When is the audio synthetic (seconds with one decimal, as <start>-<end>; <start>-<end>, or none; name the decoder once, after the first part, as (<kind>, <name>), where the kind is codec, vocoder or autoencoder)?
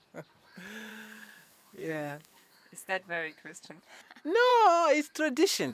0.9-3.8 (codec, SNAC)